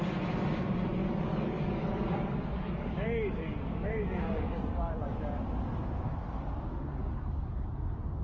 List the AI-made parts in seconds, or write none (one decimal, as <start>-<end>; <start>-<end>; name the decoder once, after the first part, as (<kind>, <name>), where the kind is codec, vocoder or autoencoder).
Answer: 1.0-4.9 (codec, DAC); 6.9-7.6